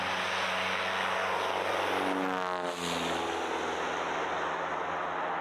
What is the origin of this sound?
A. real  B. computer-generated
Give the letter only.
A